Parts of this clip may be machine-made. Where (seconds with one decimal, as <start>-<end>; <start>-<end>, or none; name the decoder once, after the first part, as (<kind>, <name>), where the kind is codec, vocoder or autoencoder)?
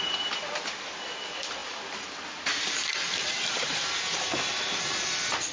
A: 0.0-5.5 (vocoder, BigVGAN v2)